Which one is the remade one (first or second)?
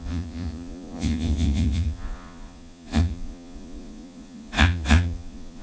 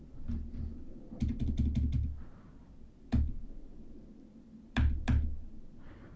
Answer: first